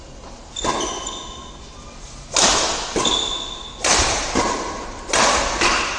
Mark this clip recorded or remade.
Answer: recorded